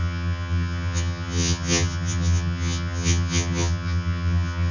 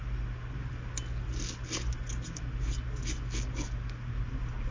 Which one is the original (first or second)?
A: second